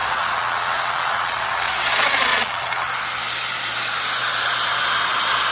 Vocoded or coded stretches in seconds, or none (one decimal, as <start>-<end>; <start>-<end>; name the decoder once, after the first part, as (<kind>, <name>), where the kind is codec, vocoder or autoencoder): 0.0-1.7 (vocoder, WaveNeXt); 2.3-2.9